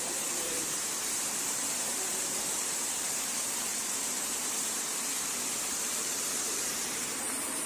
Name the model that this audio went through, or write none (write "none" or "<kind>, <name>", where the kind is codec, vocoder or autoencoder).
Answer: vocoder, BigVGAN v2